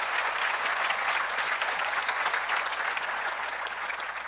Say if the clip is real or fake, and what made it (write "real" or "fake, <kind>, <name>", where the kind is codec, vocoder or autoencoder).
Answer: fake, vocoder, Vocos